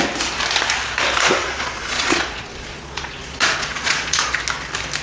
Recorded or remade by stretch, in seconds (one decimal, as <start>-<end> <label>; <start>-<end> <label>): 0.0-1.4 recorded; 1.4-4.4 remade; 4.4-5.0 recorded